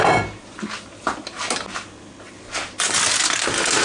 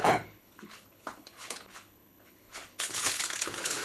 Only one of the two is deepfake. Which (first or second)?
second